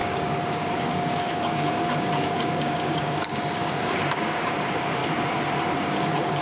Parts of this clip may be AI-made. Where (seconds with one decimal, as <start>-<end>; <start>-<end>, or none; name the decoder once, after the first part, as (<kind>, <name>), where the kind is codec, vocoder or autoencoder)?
0.0-5.0 (codec, DAC); 5.8-6.4